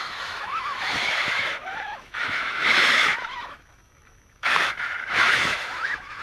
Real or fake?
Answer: fake